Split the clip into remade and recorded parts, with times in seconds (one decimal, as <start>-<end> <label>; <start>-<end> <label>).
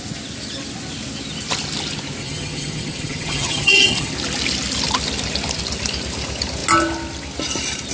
0.0-2.2 recorded; 2.2-4.1 remade; 4.1-7.9 recorded